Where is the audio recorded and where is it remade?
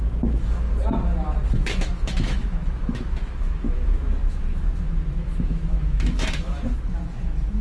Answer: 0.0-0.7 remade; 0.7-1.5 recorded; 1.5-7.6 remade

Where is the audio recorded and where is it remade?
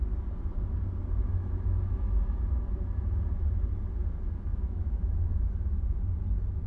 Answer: 0.0-1.3 recorded; 1.3-2.1 remade; 2.1-4.5 recorded; 4.5-5.5 remade; 5.5-6.7 recorded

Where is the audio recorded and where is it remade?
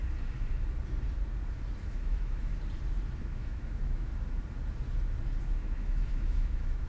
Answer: 0.0-1.8 recorded; 1.8-2.5 remade; 2.5-3.2 recorded; 3.2-4.1 remade; 4.1-5.4 recorded; 5.4-6.9 remade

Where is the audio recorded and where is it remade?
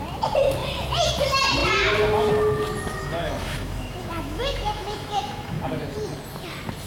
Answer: 0.0-3.0 recorded; 3.0-5.6 remade; 5.6-6.9 recorded